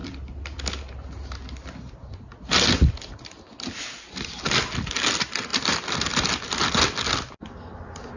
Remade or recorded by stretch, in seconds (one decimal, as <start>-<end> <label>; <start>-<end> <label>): 0.0-8.2 recorded